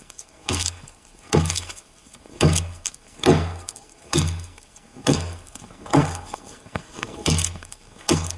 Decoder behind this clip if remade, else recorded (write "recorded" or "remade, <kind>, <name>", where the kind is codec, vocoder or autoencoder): remade, codec, SNAC